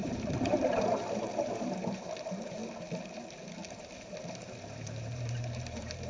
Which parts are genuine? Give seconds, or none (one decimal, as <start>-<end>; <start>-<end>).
2.6-3.7